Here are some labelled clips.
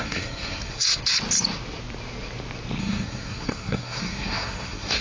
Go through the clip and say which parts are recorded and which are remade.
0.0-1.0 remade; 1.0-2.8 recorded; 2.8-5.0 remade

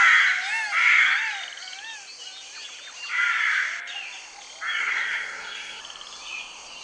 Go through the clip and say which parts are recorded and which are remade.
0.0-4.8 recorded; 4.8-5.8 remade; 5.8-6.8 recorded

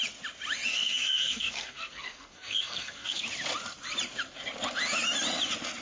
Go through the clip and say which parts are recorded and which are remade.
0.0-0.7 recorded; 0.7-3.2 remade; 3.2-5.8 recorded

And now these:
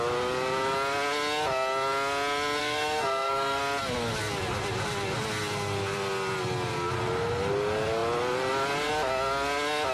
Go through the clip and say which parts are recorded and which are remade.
0.0-2.6 recorded; 2.6-3.6 remade; 3.6-9.9 recorded

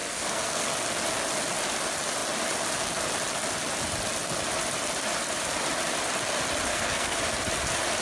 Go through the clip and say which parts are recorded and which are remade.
0.0-0.7 remade; 0.7-6.7 recorded; 6.7-7.2 remade; 7.2-8.0 recorded

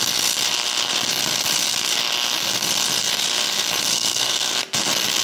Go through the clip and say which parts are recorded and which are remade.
0.0-3.9 recorded; 3.9-4.6 remade; 4.6-5.2 recorded